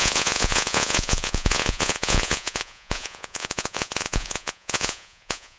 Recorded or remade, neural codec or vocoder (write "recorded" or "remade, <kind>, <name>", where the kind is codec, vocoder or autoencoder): remade, vocoder, Vocos